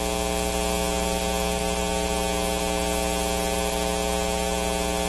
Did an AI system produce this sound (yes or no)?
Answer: no